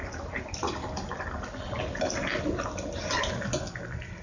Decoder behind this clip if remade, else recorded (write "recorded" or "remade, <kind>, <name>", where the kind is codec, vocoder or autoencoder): recorded